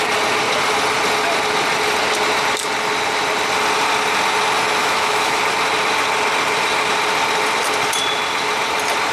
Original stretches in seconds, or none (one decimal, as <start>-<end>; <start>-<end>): 0.0-4.8; 5.4-9.1